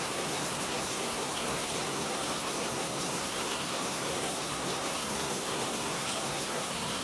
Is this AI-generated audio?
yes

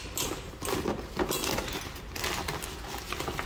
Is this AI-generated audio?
no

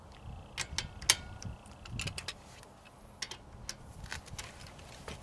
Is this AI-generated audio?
no